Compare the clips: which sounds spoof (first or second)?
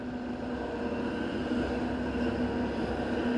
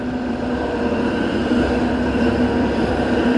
second